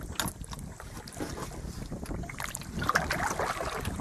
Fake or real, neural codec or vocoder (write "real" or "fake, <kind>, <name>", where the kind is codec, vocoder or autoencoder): real